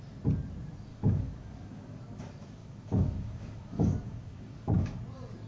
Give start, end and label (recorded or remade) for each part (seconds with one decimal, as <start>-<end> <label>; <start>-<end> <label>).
0.0-0.9 recorded; 0.9-2.0 remade; 2.0-2.6 recorded; 2.6-5.0 remade; 5.0-5.5 recorded